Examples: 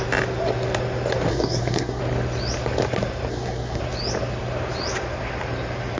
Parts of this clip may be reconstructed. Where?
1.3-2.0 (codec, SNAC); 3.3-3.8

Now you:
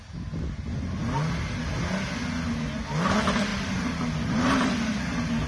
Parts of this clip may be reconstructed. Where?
3.5-4.7 (vocoder, BigVGAN v2)

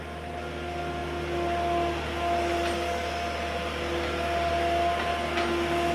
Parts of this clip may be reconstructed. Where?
none

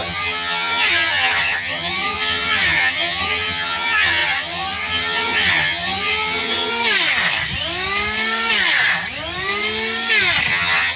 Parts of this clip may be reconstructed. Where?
0.0-6.7 (vocoder, HiFi-GAN); 10.5-11.0

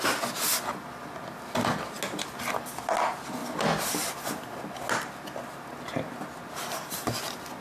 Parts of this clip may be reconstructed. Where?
none